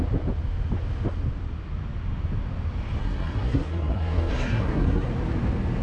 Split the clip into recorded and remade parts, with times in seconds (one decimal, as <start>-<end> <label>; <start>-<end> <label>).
0.0-3.0 recorded; 3.0-5.1 remade; 5.1-5.8 recorded

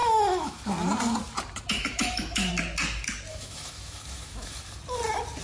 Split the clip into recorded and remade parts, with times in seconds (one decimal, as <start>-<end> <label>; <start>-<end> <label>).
0.0-0.6 remade; 0.6-1.7 recorded; 1.7-2.5 remade; 2.5-3.3 recorded; 3.3-4.8 remade; 4.8-5.4 recorded

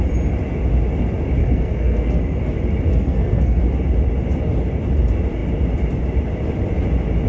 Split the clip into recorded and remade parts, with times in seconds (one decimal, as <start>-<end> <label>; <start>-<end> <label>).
0.0-1.4 recorded; 1.4-2.4 remade; 2.4-2.9 recorded; 2.9-3.6 remade; 3.6-7.3 recorded

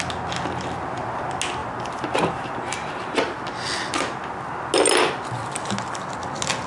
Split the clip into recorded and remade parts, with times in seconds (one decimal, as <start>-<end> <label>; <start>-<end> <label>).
0.0-1.6 recorded; 1.6-3.4 remade; 3.4-6.7 recorded

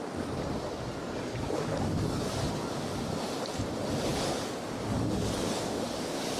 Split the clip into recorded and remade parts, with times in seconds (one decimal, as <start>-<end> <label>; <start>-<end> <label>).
0.0-1.0 recorded; 1.0-2.5 remade; 2.5-4.1 recorded; 4.1-6.4 remade

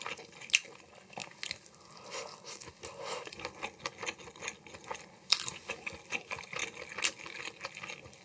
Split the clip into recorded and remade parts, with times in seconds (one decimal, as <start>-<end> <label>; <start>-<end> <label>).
0.0-8.2 recorded

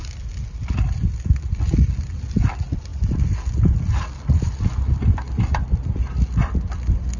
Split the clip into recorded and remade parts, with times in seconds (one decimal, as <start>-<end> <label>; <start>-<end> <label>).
0.0-7.2 recorded